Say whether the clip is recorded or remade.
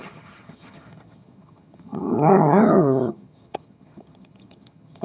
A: remade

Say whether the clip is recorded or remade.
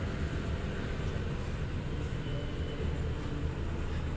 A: recorded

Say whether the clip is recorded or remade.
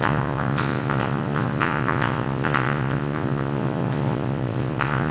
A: remade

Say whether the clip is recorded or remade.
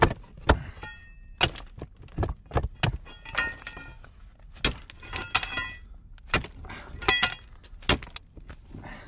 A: recorded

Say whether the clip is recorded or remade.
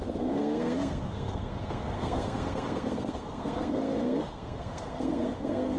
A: remade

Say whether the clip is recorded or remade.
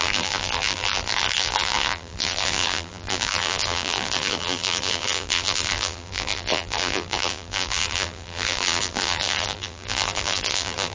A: remade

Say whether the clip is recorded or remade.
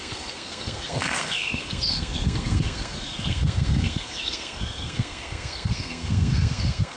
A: remade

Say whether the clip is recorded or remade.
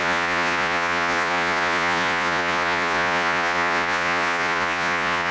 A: remade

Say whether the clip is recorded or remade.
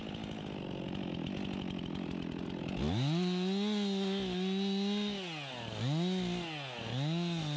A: recorded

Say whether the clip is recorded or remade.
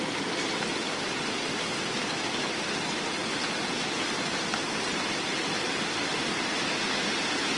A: recorded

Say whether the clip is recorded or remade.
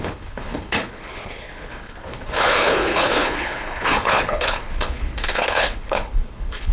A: remade